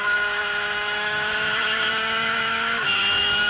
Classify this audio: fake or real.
fake